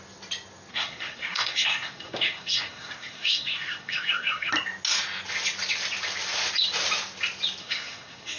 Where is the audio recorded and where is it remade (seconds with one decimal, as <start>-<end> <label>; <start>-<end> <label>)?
0.0-0.7 recorded; 0.7-4.5 remade; 4.5-7.6 recorded; 7.6-8.4 remade